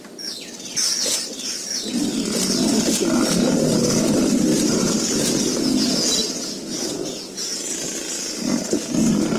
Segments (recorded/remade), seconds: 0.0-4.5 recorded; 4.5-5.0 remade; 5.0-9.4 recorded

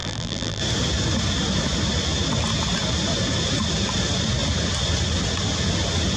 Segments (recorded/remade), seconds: 0.0-0.6 remade; 0.6-6.2 recorded

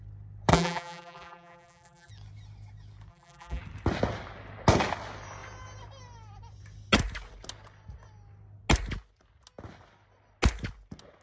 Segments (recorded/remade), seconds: 0.0-0.5 recorded; 0.5-2.1 remade; 2.1-3.1 recorded; 3.1-3.6 remade; 3.6-11.2 recorded

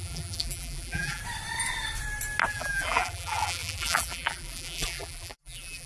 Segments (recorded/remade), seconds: 0.0-1.2 remade; 1.2-2.5 recorded; 2.5-5.9 remade

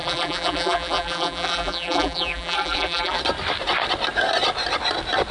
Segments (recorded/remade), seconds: 0.0-3.2 remade; 3.2-5.3 recorded

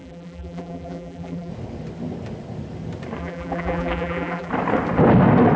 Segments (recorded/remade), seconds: 0.0-1.5 remade; 1.5-3.2 recorded; 3.2-4.5 remade; 4.5-5.6 recorded